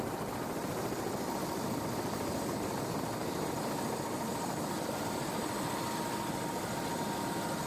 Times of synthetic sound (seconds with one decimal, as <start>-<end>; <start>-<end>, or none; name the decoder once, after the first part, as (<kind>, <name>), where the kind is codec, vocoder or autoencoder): none